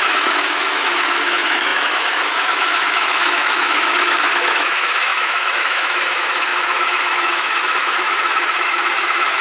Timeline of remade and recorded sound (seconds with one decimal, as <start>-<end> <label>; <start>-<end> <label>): 0.0-9.4 remade